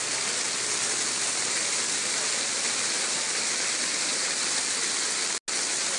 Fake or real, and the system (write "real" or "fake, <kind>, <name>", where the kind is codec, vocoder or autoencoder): real